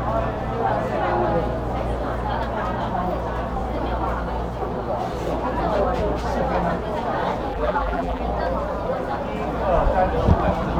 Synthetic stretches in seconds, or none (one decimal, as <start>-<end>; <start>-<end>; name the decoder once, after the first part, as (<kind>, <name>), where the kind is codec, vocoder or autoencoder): 7.5-8.2 (vocoder, BigVGAN v2)